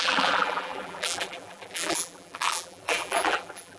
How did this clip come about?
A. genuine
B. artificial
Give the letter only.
B